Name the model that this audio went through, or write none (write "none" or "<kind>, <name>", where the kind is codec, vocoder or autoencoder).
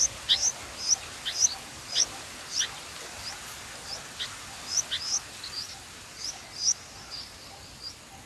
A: none